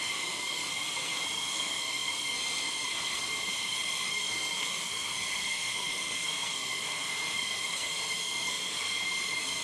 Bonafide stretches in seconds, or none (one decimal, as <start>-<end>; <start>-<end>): none